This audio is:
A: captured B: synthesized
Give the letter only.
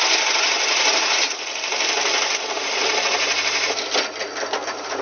A